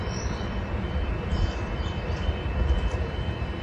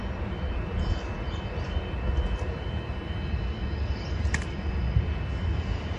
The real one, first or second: second